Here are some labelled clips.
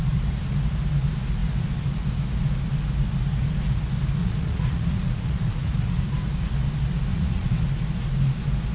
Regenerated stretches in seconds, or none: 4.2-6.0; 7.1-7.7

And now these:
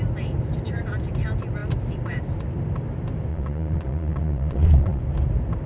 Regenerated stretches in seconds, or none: 3.3-5.0